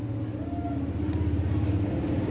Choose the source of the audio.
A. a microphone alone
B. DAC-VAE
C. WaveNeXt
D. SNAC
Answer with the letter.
A